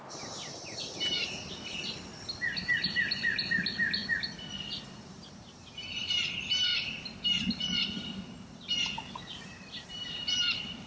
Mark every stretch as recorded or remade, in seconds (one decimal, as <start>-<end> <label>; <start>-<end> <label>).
0.0-1.2 remade; 1.2-3.0 recorded; 3.0-4.0 remade; 4.0-4.9 recorded; 4.9-6.7 remade; 6.7-9.1 recorded; 9.1-10.9 remade

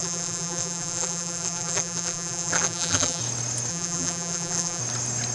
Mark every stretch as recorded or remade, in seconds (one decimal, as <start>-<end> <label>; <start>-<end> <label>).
0.0-3.2 remade; 3.2-3.7 recorded; 3.7-4.8 remade; 4.8-5.3 recorded